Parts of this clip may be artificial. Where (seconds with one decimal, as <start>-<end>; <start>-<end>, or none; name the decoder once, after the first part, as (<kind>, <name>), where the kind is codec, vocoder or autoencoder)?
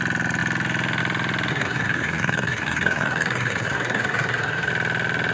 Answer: 1.5-4.7 (codec, SNAC)